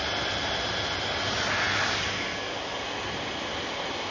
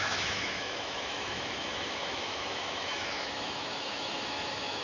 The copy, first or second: second